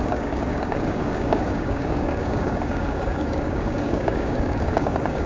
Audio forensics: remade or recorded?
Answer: remade